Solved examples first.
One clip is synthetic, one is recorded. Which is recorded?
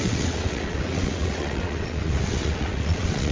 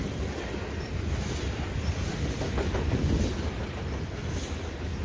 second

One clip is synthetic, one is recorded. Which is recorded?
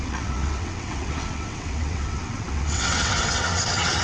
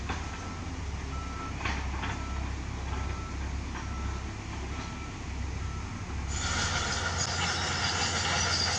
second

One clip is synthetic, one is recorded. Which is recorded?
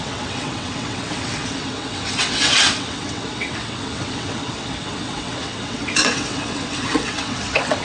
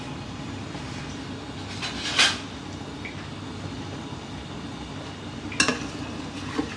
second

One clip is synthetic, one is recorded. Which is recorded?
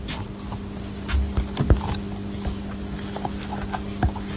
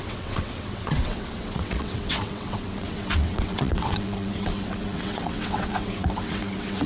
first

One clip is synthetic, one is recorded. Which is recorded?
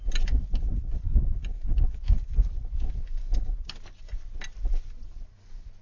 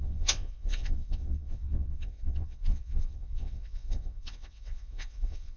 first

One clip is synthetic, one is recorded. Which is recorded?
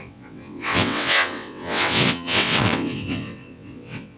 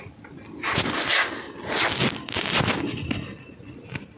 second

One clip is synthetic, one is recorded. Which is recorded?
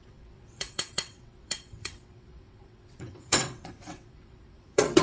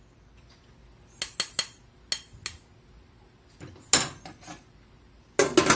second